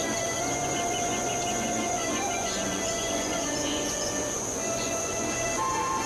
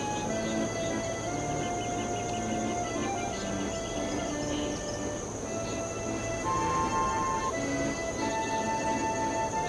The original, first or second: second